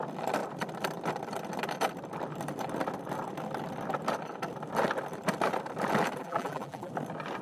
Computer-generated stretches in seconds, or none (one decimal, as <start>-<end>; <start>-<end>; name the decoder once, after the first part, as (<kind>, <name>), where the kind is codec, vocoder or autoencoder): 6.2-6.9 (vocoder, BigVGAN v2)